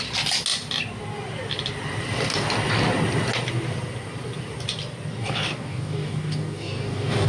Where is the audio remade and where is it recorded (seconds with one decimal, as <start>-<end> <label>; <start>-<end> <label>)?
0.0-5.2 recorded; 5.2-7.3 remade